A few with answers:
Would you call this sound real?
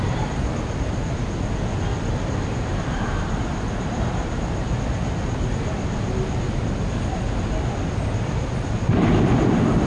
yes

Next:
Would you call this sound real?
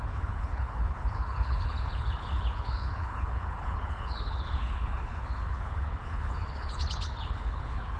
no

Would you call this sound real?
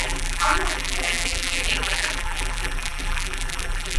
no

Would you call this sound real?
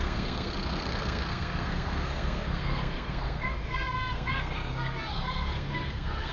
no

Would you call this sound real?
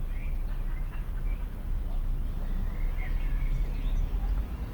yes